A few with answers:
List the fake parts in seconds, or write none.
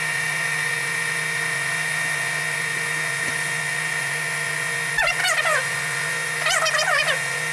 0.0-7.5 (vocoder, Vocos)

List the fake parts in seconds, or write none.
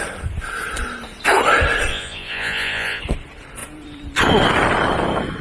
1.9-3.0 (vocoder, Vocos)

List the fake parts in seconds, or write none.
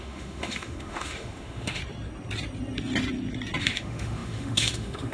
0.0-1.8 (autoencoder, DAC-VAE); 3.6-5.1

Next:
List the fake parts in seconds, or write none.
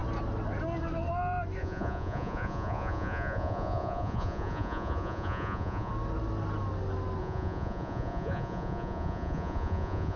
1.6-5.9 (vocoder, Vocos); 7.2-10.2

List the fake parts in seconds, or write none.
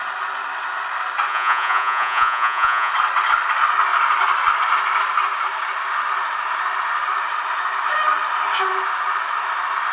1.3-2.9 (vocoder, Vocos)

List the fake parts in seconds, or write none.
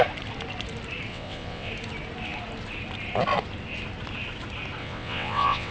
1.1-1.7 (vocoder, WaveNeXt); 4.8-5.7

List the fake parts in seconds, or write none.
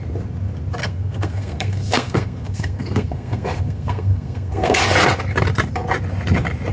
0.8-4.8 (codec, SNAC)